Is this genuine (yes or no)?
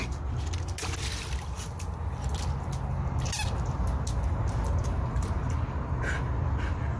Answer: yes